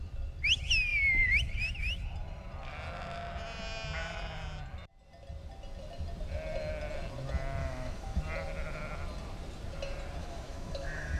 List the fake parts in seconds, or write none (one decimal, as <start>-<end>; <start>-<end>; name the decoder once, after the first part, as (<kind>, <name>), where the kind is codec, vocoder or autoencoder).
7.6-8.2 (autoencoder, DAC-VAE); 10.2-11.2